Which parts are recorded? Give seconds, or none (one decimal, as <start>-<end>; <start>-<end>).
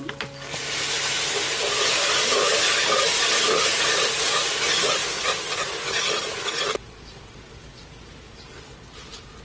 0.0-9.4